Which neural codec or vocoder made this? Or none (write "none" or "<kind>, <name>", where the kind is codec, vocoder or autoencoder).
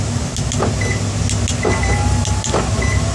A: none